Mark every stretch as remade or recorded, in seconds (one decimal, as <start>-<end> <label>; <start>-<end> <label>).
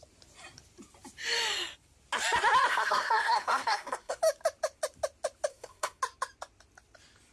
0.0-2.7 recorded; 2.7-4.2 remade; 4.2-5.5 recorded; 5.5-6.0 remade; 6.0-7.3 recorded